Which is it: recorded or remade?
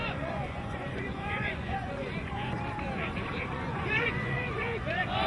remade